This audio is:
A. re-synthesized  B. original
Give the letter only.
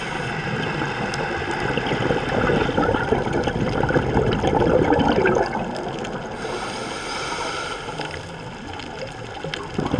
B